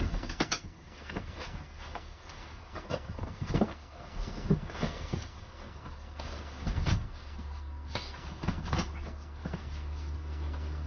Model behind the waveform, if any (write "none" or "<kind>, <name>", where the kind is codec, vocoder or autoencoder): codec, SNAC